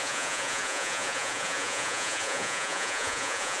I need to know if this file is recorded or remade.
remade